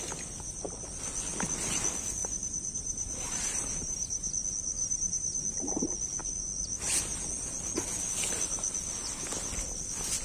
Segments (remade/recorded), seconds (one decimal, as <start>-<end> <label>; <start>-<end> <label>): 0.0-2.2 recorded; 2.2-4.3 remade; 4.3-4.8 recorded; 4.8-5.4 remade; 5.4-10.2 recorded